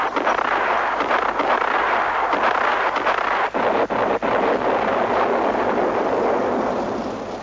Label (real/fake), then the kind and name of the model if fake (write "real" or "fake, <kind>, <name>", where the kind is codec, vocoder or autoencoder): real